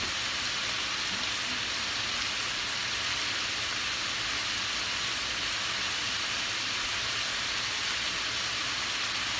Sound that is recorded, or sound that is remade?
recorded